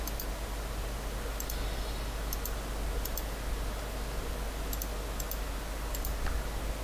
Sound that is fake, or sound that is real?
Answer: real